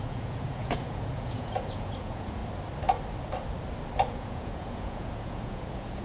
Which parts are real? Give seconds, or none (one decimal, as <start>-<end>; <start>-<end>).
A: 2.4-4.1